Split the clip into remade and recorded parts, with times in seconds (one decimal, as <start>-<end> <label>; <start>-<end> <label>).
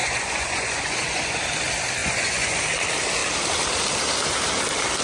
0.0-1.4 remade; 1.4-2.0 recorded; 2.0-2.6 remade; 2.6-5.0 recorded